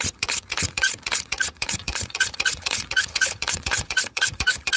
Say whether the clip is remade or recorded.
remade